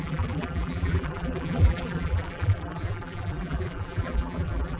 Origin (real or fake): fake